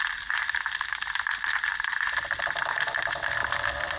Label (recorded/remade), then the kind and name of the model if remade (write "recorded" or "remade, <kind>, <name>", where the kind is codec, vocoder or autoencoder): recorded